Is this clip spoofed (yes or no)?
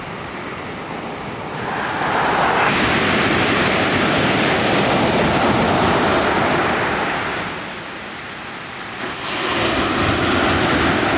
no